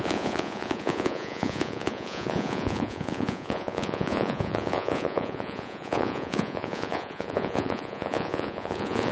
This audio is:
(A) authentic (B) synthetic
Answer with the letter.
B